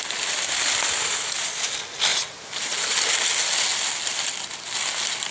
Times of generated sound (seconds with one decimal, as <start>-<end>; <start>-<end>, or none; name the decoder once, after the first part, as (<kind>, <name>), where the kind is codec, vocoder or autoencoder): 2.1-3.0 (vocoder, BigVGAN v2)